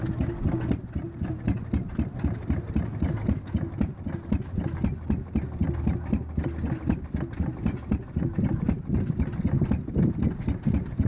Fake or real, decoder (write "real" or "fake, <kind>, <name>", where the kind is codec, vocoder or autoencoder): real